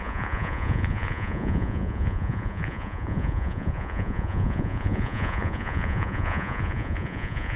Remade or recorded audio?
remade